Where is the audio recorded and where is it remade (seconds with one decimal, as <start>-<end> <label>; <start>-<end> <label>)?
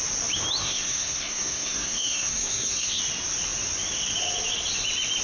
0.0-0.6 recorded; 0.6-3.0 remade; 3.0-5.2 recorded